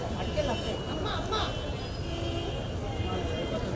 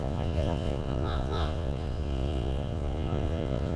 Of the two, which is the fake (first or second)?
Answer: second